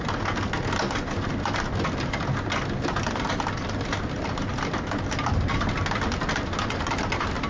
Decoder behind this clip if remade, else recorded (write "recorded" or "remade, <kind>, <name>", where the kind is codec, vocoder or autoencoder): recorded